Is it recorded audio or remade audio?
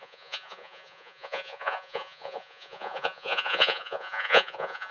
remade